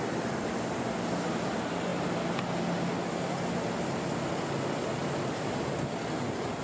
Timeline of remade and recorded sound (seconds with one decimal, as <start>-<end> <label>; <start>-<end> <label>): 0.0-6.6 recorded